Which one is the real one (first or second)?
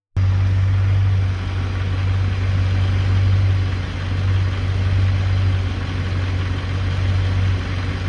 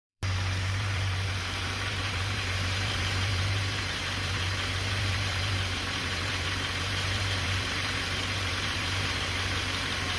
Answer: first